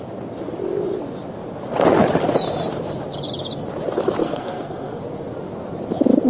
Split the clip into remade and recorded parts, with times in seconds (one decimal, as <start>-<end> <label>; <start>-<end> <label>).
0.0-4.2 recorded; 4.2-5.0 remade; 5.0-6.3 recorded